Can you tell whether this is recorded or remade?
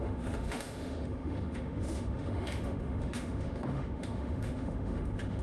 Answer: remade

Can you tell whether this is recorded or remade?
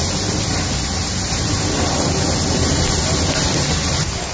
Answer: recorded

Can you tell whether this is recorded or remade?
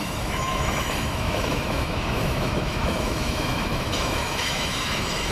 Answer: remade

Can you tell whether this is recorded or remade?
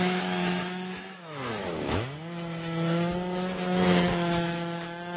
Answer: remade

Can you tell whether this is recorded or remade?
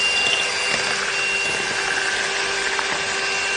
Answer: recorded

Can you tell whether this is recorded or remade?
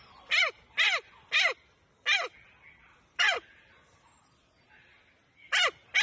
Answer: recorded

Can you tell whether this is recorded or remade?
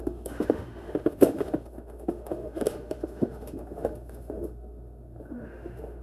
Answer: remade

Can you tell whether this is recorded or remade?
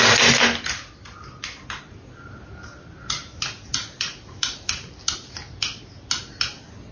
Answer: recorded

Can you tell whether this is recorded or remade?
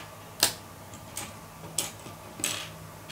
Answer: recorded